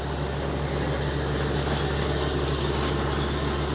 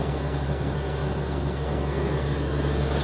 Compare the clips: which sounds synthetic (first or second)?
second